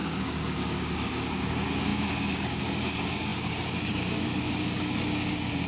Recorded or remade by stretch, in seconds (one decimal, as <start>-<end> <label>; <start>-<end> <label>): 0.0-5.7 remade

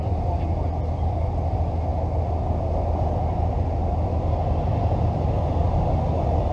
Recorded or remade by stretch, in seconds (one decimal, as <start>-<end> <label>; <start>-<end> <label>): 0.0-6.5 recorded

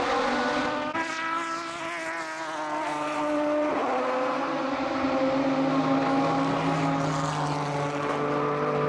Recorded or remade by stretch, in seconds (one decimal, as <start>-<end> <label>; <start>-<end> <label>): 0.0-8.9 recorded

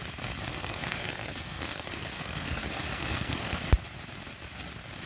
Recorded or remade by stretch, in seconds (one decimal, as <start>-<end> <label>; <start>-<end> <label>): 0.0-0.5 recorded; 0.5-3.6 remade; 3.6-5.1 recorded

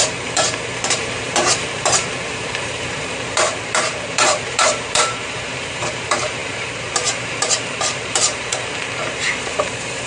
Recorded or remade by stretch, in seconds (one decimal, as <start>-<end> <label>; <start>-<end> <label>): 0.0-10.1 remade

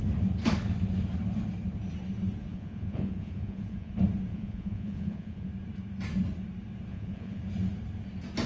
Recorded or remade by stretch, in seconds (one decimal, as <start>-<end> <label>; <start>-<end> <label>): 0.0-2.5 recorded; 2.5-3.9 remade; 3.9-4.3 recorded; 4.3-5.5 remade; 5.5-6.9 recorded; 6.9-7.4 remade; 7.4-8.5 recorded